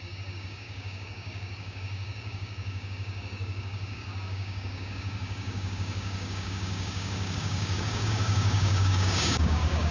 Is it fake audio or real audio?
fake